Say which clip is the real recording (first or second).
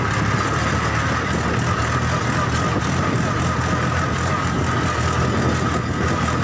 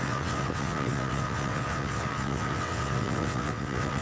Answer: first